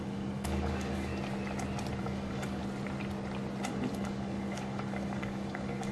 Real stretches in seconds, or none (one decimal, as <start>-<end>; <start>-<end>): 1.1-2.0; 2.6-3.7